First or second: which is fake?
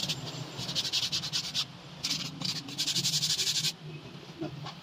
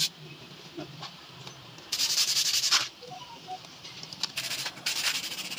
second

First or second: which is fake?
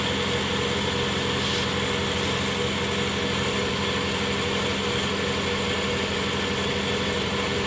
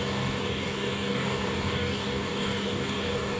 second